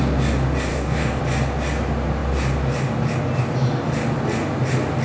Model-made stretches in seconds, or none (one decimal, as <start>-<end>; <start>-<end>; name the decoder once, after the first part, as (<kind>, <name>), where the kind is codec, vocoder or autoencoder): 0.7-1.2 (codec, DAC)